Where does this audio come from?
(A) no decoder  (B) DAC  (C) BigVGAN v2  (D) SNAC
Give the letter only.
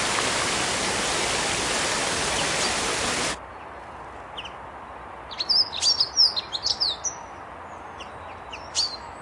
A